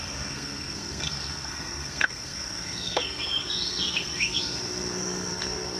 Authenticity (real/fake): fake